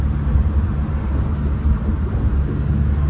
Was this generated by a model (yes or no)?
no